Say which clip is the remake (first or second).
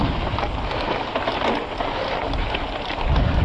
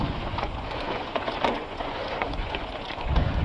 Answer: second